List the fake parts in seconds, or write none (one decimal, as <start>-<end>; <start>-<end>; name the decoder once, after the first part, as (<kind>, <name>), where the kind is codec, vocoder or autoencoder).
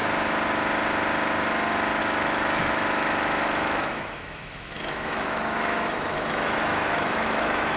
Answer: 2.0-7.8 (autoencoder, DAC-VAE)